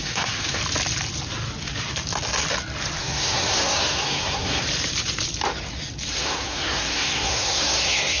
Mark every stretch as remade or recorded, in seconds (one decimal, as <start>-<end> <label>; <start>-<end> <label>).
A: 0.0-0.6 remade; 0.6-3.0 recorded; 3.0-4.6 remade; 4.6-6.1 recorded; 6.1-8.2 remade